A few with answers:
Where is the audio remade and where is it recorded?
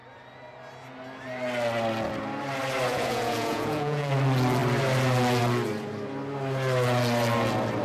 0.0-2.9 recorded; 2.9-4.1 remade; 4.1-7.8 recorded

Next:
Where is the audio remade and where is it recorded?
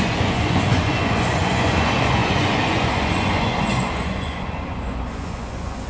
0.0-5.9 remade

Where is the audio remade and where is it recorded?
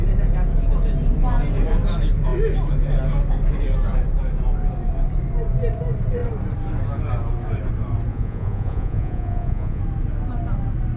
0.0-8.1 recorded; 8.1-9.8 remade; 9.8-11.0 recorded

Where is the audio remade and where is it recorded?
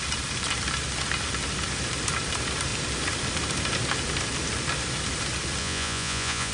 0.0-5.6 recorded; 5.6-6.5 remade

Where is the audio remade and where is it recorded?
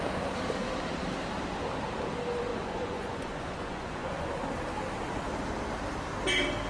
0.0-2.5 recorded; 2.5-4.3 remade; 4.3-6.7 recorded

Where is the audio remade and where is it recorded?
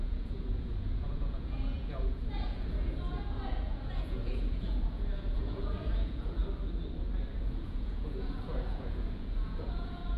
0.0-6.4 remade; 6.4-7.4 recorded; 7.4-10.2 remade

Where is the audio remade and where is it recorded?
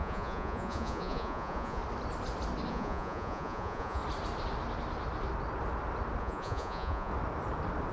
0.0-1.8 remade; 1.8-2.7 recorded; 2.7-4.0 remade; 4.0-6.2 recorded; 6.2-7.1 remade; 7.1-7.9 recorded